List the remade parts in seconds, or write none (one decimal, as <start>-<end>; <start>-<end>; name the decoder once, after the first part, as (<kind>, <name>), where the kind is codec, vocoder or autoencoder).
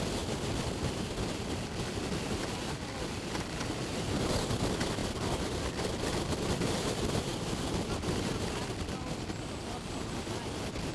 none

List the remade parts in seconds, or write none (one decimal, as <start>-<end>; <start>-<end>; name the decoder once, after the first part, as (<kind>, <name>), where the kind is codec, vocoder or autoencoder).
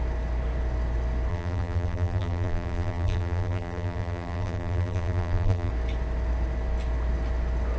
1.3-5.7 (vocoder, BigVGAN v2)